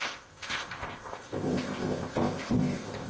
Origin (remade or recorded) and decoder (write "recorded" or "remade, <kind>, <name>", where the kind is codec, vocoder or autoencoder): remade, codec, ZipCodec